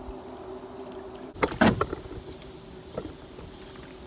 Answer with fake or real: real